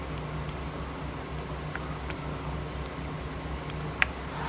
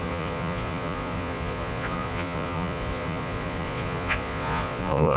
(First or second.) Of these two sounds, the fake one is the second